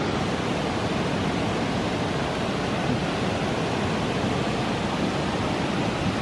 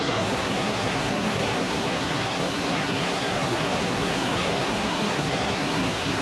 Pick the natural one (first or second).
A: first